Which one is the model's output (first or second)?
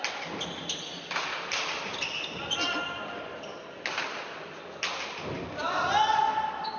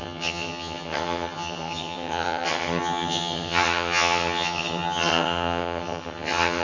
second